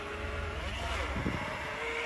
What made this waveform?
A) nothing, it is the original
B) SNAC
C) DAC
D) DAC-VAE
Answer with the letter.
A